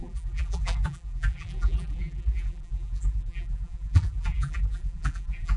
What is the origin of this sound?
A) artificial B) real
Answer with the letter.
A